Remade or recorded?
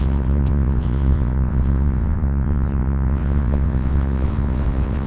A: remade